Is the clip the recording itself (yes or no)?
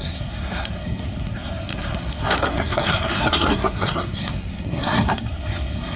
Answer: no